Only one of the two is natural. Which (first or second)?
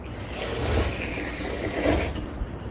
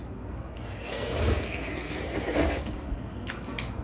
first